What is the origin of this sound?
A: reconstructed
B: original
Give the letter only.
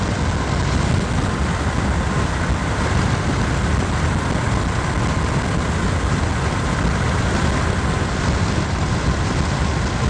B